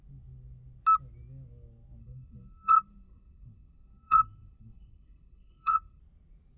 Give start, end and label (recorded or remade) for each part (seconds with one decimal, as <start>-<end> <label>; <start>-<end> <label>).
0.0-2.0 recorded; 2.0-6.0 remade; 6.0-6.6 recorded